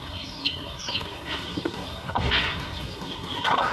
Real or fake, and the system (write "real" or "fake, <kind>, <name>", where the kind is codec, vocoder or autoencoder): fake, codec, SNAC